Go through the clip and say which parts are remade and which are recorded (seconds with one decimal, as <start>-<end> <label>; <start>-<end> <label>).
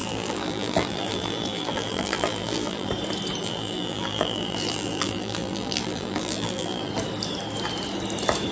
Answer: 0.0-2.9 remade; 2.9-3.4 recorded; 3.4-6.9 remade; 6.9-8.5 recorded